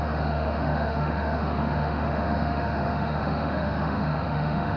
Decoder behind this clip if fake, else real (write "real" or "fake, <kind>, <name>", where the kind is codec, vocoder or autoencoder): fake, autoencoder, DAC-VAE